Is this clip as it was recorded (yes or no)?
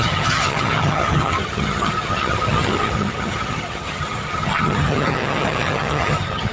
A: no